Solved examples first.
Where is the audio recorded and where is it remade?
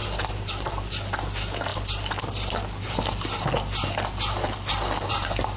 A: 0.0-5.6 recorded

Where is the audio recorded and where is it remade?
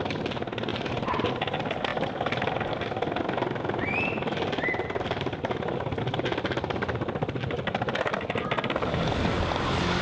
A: 0.0-0.7 recorded; 0.7-1.3 remade; 1.3-10.0 recorded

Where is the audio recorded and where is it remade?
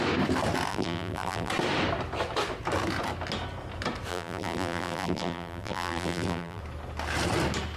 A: 0.0-0.7 recorded; 0.7-1.5 remade; 1.5-4.1 recorded; 4.1-6.6 remade; 6.6-7.8 recorded